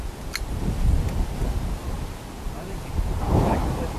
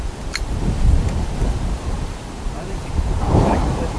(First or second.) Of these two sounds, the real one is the first